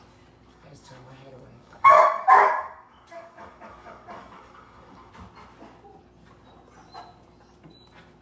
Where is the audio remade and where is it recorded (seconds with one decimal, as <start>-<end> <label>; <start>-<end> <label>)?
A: 0.0-0.5 recorded; 0.5-5.1 remade; 5.1-8.2 recorded